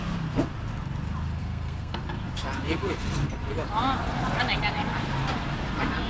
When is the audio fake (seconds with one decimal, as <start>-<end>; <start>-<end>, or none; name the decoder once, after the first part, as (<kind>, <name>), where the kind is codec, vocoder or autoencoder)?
1.4-2.0 (codec, SNAC)

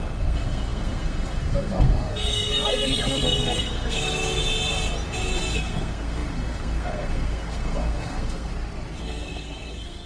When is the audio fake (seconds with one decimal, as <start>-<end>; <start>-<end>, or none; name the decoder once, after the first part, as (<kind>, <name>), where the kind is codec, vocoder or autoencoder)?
0.0-4.4 (codec, SNAC); 5.4-8.5; 9.0-10.1

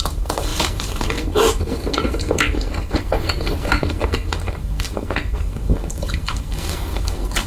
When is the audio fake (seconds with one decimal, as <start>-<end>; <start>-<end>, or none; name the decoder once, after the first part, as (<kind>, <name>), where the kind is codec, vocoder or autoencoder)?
0.0-7.5 (codec, SNAC)

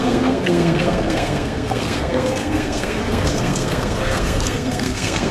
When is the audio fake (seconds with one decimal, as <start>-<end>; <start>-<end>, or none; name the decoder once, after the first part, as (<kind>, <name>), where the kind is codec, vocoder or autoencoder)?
0.0-5.3 (codec, SNAC)

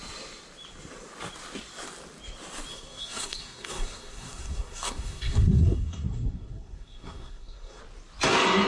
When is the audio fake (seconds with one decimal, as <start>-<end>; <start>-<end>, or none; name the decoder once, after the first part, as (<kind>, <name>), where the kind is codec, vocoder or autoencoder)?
2.7-7.8 (codec, SNAC)

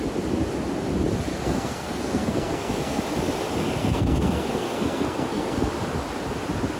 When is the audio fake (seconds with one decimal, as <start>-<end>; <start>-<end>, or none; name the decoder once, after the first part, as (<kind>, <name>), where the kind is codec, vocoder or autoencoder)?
1.3-3.0 (codec, SNAC); 3.8-5.7